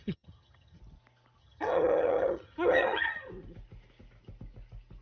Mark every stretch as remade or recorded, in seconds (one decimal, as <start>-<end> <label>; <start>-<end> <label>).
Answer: 0.0-0.8 remade; 0.8-1.4 recorded; 1.4-3.3 remade; 3.3-5.0 recorded